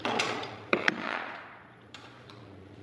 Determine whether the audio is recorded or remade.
remade